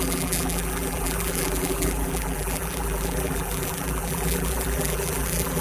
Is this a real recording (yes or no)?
no